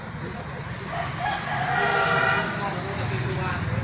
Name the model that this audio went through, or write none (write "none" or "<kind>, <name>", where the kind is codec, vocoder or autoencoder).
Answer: none